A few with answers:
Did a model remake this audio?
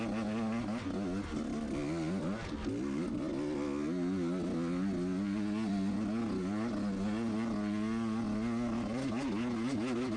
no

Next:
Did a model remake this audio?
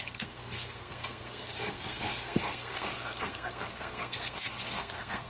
yes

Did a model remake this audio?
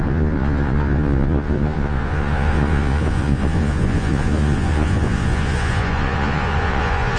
yes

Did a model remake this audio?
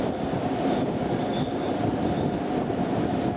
no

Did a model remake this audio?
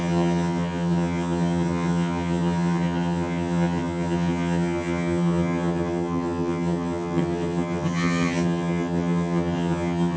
yes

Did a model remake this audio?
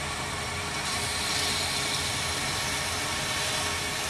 no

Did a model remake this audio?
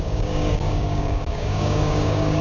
yes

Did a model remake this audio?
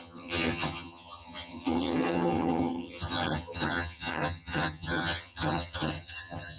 yes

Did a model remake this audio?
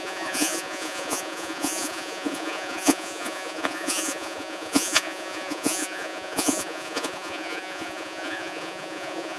yes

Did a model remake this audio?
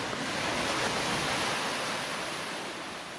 no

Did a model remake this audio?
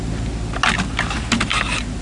no